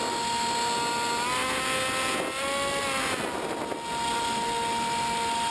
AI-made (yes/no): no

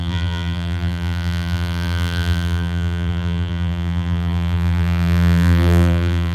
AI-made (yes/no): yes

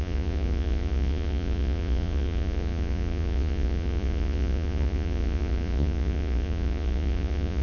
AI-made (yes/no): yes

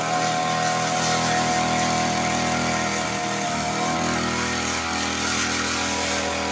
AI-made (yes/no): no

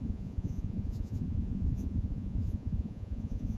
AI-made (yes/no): yes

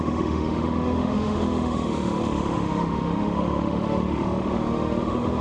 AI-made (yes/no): yes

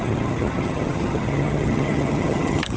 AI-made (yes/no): yes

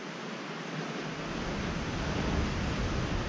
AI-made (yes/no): no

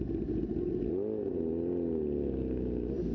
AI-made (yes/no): no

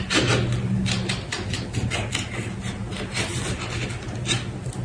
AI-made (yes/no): no